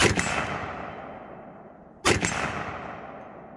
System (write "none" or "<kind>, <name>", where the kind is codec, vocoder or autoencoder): none